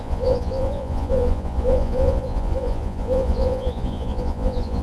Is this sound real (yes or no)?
no